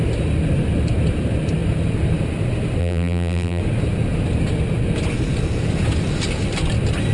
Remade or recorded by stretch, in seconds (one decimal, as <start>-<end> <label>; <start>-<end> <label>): 0.0-2.8 recorded; 2.8-3.6 remade; 3.6-7.1 recorded